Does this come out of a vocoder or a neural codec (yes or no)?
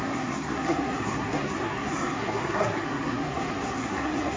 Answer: yes